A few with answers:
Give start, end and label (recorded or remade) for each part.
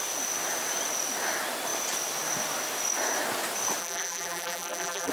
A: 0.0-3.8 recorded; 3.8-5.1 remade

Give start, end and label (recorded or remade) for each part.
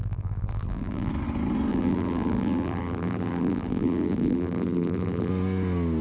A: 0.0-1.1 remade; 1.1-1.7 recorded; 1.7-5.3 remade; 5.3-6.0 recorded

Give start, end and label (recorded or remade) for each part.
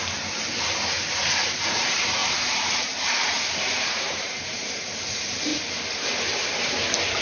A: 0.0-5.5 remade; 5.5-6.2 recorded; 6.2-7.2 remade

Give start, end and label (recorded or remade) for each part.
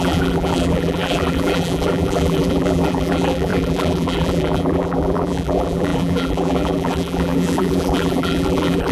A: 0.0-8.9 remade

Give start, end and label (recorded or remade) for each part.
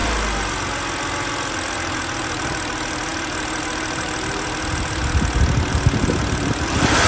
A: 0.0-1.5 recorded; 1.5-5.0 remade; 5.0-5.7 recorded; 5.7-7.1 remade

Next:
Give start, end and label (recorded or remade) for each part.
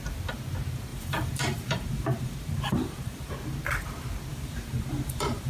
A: 0.0-0.9 recorded; 0.9-3.3 remade; 3.3-4.3 recorded; 4.3-5.5 remade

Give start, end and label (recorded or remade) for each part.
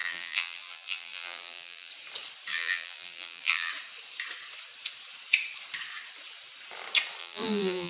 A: 0.0-1.9 remade; 1.9-2.5 recorded; 2.5-3.7 remade; 3.7-7.2 recorded; 7.2-7.9 remade